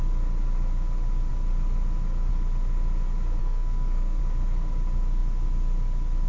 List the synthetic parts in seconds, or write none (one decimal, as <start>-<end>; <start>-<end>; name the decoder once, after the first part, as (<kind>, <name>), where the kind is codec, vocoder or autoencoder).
3.4-4.2 (codec, SNAC)

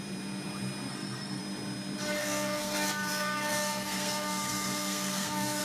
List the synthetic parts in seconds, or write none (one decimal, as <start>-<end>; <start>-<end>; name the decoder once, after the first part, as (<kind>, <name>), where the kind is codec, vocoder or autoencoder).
0.9-1.4 (codec, SNAC); 2.2-5.6

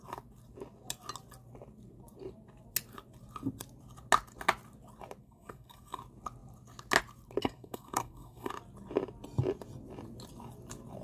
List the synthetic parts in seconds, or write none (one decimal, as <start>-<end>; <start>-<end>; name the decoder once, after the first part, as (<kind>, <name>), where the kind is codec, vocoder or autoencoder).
5.2-6.0 (codec, SNAC); 7.4-8.5

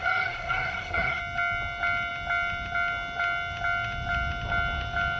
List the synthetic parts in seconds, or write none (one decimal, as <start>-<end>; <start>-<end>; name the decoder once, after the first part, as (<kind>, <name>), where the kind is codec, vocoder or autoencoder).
0.0-1.2 (codec, SNAC)